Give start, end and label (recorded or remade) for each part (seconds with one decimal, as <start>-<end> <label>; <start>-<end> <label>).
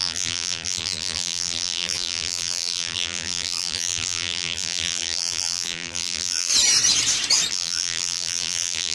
0.0-6.5 remade; 6.5-7.5 recorded; 7.5-8.9 remade